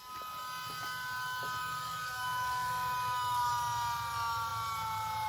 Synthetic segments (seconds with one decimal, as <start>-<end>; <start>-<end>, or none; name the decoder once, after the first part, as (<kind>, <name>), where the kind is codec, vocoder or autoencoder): 1.6-3.5 (codec, DAC)